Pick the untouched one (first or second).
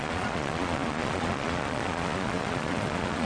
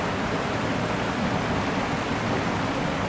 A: second